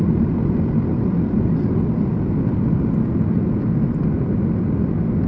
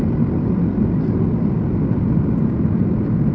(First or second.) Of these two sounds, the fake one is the second